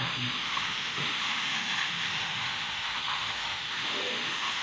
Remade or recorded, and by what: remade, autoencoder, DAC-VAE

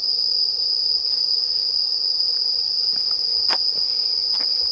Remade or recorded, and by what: recorded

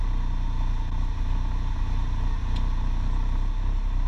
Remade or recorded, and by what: recorded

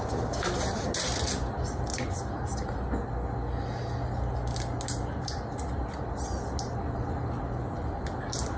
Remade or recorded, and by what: recorded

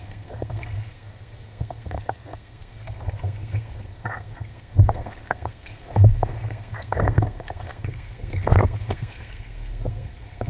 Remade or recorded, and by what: remade, codec, SNAC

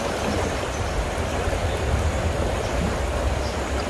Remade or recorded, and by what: recorded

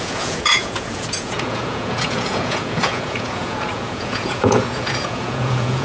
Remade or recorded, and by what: remade, vocoder, Vocos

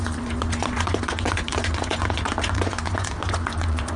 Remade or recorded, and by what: remade, vocoder, Vocos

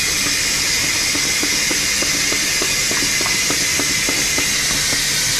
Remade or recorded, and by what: recorded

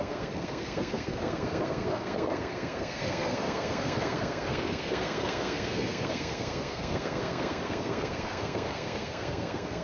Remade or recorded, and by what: remade, codec, SNAC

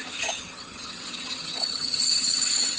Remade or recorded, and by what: remade, vocoder, HiFi-GAN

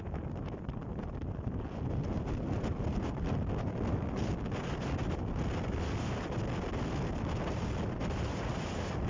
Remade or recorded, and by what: recorded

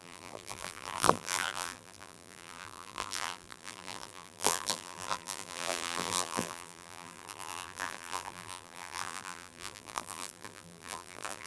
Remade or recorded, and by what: remade, vocoder, BigVGAN v2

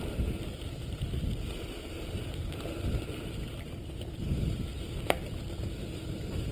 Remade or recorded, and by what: recorded